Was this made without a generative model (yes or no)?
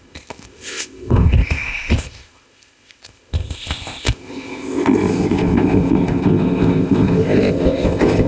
no